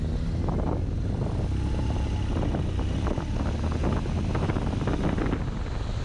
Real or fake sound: real